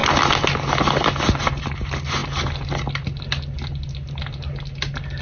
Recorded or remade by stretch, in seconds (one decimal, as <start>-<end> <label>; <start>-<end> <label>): 0.0-5.2 recorded